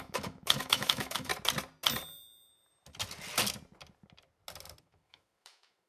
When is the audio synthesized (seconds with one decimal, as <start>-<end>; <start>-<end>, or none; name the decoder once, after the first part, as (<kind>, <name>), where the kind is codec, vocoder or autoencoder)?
0.0-1.3 (autoencoder, DAC-VAE); 4.8-5.9